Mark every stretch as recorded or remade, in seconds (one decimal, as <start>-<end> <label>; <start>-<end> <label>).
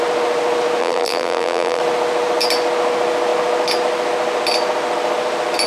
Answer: 0.0-0.8 recorded; 0.8-1.8 remade; 1.8-5.7 recorded